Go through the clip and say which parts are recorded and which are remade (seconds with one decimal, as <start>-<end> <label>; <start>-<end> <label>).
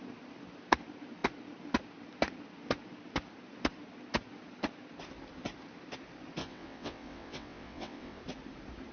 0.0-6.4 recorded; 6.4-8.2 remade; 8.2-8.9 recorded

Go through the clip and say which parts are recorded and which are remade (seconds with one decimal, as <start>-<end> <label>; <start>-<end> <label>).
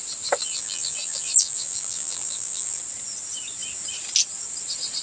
0.0-0.4 recorded; 0.4-2.8 remade; 2.8-5.0 recorded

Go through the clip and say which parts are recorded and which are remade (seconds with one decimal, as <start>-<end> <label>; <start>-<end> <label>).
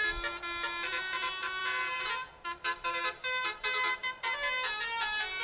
0.0-5.4 recorded